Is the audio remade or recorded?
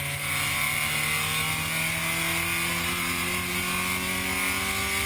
recorded